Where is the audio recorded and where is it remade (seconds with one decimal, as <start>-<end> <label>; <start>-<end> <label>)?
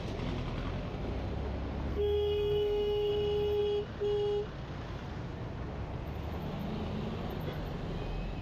0.0-1.9 recorded; 1.9-3.1 remade; 3.1-8.4 recorded